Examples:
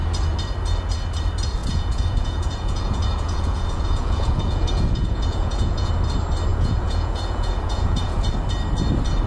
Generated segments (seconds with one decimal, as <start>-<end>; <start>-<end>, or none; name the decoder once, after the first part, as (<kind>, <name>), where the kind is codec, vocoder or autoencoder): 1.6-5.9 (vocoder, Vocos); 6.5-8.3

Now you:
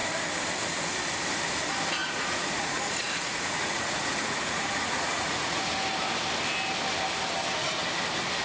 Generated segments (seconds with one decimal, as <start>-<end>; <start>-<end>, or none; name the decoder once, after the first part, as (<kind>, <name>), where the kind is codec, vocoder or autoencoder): 2.0-5.6 (vocoder, Vocos)

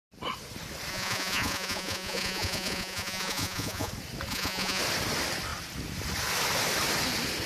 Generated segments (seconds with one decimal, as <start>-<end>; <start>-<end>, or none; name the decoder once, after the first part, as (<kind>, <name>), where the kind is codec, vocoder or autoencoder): 0.9-3.9 (vocoder, Vocos); 4.3-4.8

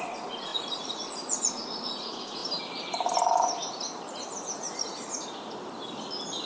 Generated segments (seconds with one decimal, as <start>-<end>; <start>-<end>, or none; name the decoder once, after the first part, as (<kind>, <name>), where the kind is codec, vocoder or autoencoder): 0.0-2.4 (vocoder, Vocos)

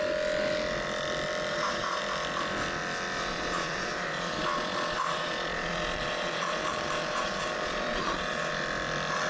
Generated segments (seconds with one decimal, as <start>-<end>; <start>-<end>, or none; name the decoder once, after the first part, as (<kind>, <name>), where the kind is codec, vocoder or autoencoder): 1.5-2.0 (vocoder, Vocos); 3.3-8.5